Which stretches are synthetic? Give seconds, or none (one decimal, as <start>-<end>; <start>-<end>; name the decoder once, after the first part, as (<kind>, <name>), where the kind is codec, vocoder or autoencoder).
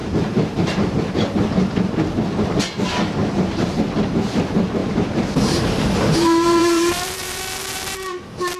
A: 0.0-1.1 (vocoder, BigVGAN v2); 3.2-3.8; 4.8-7.4